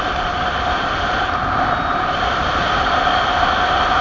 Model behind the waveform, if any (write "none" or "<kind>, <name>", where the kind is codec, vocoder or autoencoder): none